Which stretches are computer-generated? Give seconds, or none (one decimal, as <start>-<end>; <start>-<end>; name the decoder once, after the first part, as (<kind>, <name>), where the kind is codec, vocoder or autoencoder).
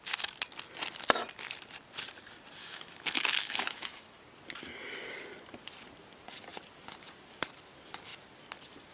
2.6-4.2 (autoencoder, DAC-VAE)